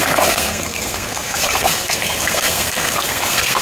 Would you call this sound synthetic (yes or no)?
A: yes